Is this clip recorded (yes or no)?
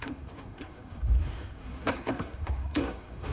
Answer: no